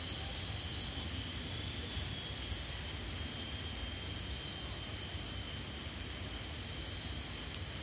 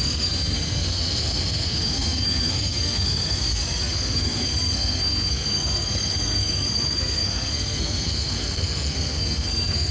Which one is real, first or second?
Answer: first